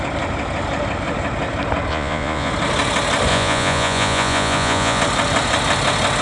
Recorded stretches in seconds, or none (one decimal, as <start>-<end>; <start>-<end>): 0.0-1.9; 2.5-3.3; 5.0-6.2

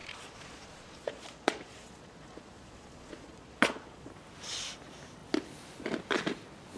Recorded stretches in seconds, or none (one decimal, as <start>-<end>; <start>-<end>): 4.1-6.8

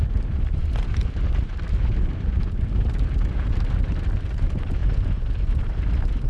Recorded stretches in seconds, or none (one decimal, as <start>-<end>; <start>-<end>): 0.0-6.3

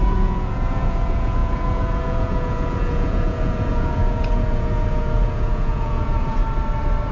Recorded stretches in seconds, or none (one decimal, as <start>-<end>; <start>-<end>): 6.4-7.1

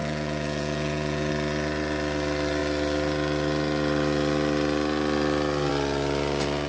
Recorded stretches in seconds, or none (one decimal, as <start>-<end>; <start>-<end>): 1.3-6.7

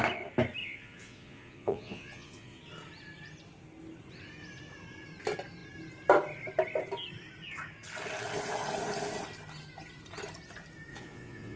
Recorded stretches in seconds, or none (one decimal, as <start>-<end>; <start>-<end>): 0.0-0.6; 2.6-10.9